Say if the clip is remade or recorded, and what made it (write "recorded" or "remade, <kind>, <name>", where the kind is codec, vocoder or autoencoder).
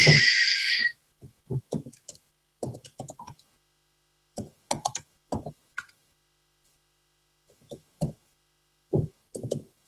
remade, autoencoder, DAC-VAE